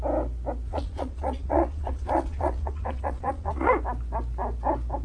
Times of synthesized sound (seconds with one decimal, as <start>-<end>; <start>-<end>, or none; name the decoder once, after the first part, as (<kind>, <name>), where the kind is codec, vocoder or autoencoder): 0.7-3.7 (vocoder, Vocos)